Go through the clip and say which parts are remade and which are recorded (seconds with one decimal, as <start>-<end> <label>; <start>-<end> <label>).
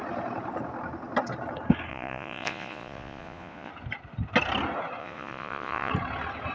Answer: 0.0-1.9 recorded; 1.9-3.7 remade; 3.7-5.0 recorded; 5.0-5.9 remade; 5.9-6.5 recorded